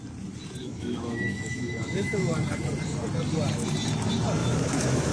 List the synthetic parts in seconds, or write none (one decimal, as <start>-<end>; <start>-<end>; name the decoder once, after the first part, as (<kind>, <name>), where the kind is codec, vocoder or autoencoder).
0.6-2.3 (autoencoder, DAC-VAE); 4.4-5.1